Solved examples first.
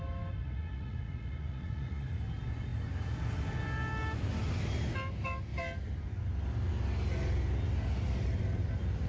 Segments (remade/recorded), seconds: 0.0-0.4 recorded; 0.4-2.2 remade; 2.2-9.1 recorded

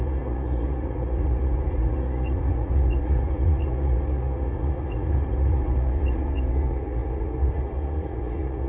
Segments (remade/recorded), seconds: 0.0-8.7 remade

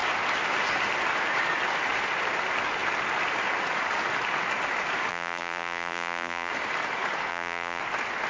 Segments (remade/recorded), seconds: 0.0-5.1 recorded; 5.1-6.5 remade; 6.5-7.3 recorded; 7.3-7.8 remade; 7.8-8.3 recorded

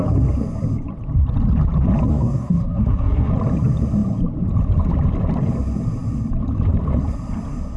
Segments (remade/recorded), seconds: 0.0-2.1 recorded; 2.1-3.3 remade; 3.3-7.8 recorded

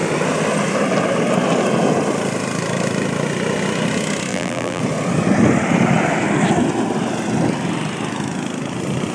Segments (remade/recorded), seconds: 0.0-4.3 recorded; 4.3-4.8 remade; 4.8-9.1 recorded

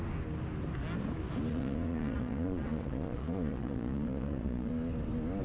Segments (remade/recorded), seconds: 0.0-1.5 recorded; 1.5-4.7 remade; 4.7-5.4 recorded

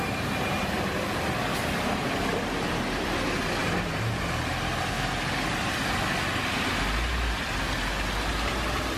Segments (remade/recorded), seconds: 0.0-3.6 recorded; 3.6-4.2 remade; 4.2-9.0 recorded

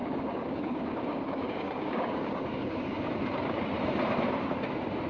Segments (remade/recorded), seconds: 0.0-3.1 remade; 3.1-5.1 recorded